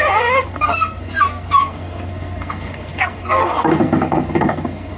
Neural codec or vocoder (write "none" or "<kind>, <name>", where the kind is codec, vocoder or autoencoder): codec, SNAC